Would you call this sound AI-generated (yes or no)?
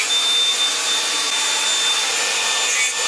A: no